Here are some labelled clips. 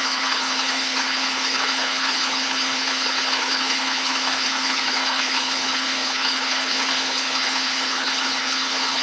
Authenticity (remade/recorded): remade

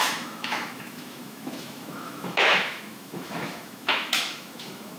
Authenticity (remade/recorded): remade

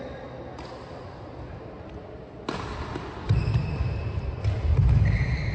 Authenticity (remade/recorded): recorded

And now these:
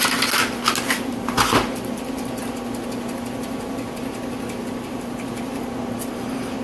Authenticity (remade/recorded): recorded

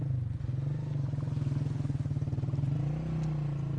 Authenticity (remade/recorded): recorded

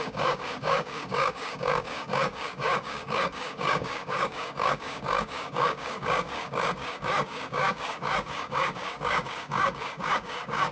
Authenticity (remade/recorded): remade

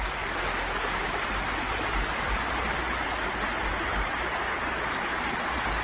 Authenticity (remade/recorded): recorded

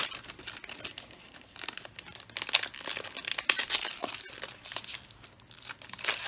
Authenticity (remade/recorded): recorded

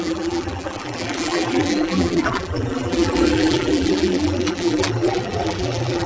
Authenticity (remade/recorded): remade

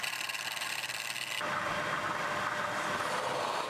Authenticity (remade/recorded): recorded